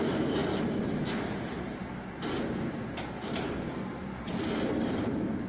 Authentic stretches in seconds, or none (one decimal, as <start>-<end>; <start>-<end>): 0.4-1.3